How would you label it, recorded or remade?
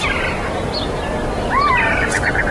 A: recorded